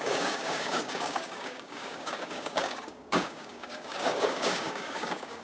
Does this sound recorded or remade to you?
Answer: remade